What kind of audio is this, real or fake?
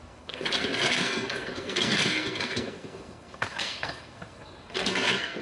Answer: fake